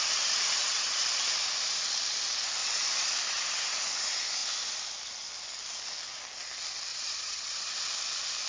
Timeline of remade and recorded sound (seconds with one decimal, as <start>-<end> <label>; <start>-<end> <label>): 0.0-0.6 recorded; 0.6-1.2 remade; 1.2-2.6 recorded; 2.6-3.5 remade; 3.5-6.9 recorded; 6.9-7.8 remade; 7.8-8.5 recorded